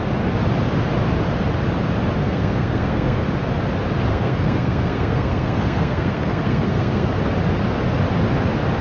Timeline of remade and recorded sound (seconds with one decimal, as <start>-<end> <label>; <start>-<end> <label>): 0.0-2.2 recorded; 2.2-3.2 remade; 3.2-4.1 recorded; 4.1-7.2 remade; 7.2-8.8 recorded